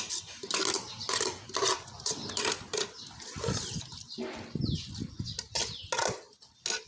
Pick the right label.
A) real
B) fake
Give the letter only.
A